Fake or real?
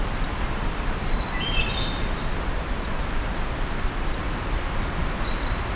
fake